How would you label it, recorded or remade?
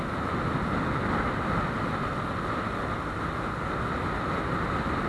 recorded